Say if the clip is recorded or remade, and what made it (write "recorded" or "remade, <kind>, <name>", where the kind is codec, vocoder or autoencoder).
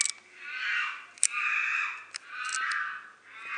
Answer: recorded